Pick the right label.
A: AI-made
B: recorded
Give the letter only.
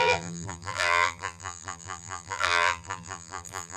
A